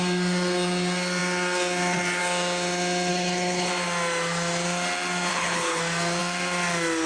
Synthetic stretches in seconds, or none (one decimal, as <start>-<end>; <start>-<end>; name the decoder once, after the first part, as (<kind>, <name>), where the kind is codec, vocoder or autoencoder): 3.1-3.7 (codec, HILCodec); 5.3-5.8